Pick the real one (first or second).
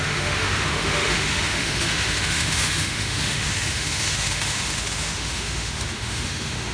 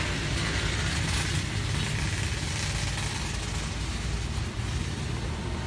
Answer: second